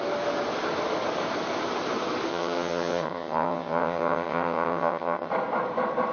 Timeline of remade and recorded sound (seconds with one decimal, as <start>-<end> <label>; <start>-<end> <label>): 0.0-2.3 recorded; 2.3-5.3 remade; 5.3-6.1 recorded